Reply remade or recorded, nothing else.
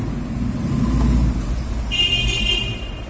recorded